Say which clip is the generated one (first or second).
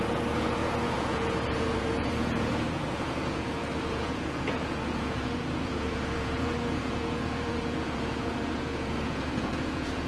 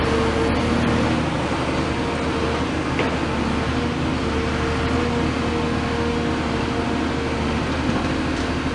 first